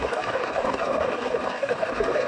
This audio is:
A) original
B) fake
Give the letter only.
B